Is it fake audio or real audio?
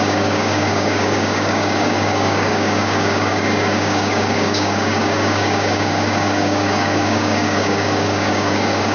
fake